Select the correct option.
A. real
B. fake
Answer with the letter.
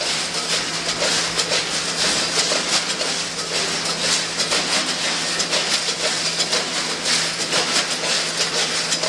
A